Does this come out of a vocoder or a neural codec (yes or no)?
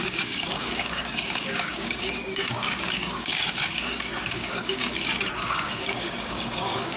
yes